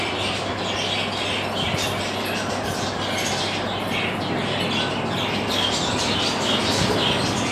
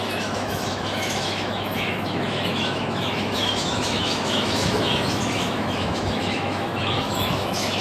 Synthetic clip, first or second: second